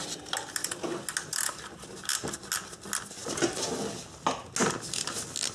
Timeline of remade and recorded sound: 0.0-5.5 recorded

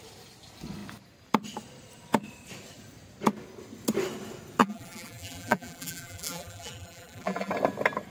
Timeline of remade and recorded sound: 0.0-4.6 recorded; 4.6-7.5 remade; 7.5-8.1 recorded

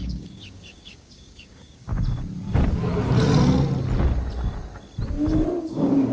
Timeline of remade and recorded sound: 0.0-1.9 remade; 1.9-5.6 recorded; 5.6-6.1 remade

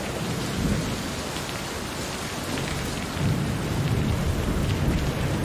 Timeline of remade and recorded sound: 0.0-0.7 remade; 0.7-3.3 recorded; 3.3-5.4 remade

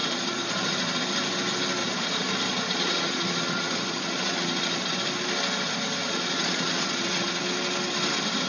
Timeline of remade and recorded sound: 0.0-1.0 remade; 1.0-1.8 recorded; 1.8-4.9 remade; 4.9-6.0 recorded; 6.0-7.4 remade; 7.4-8.5 recorded

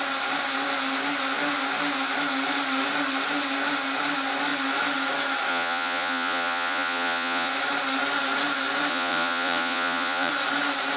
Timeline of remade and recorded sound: 0.0-5.5 recorded; 5.5-7.5 remade; 7.5-8.9 recorded; 8.9-10.3 remade; 10.3-11.0 recorded